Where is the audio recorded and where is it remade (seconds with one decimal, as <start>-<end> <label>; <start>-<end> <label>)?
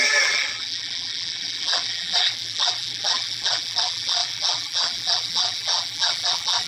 0.0-6.7 remade